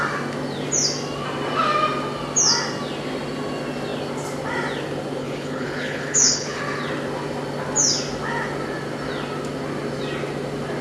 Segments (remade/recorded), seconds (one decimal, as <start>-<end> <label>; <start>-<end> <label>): 0.0-5.2 recorded; 5.2-6.6 remade; 6.6-10.8 recorded